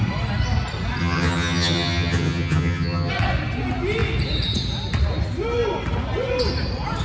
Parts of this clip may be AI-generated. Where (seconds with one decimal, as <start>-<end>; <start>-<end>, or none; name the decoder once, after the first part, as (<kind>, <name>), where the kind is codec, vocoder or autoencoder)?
1.0-3.1 (vocoder, HiFi-GAN)